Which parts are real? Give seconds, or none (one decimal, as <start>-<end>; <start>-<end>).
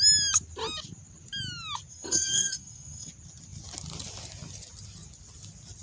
0.0-1.9; 3.1-5.8